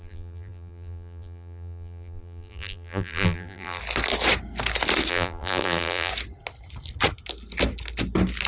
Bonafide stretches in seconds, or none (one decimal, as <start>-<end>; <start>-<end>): 3.8-5.1; 6.1-8.5